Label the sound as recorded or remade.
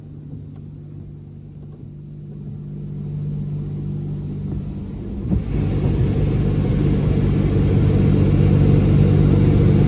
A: recorded